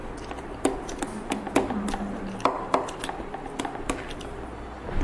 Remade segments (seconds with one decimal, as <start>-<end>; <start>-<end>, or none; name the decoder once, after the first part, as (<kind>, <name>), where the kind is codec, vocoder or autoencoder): 0.0-1.5 (vocoder, BigVGAN v2)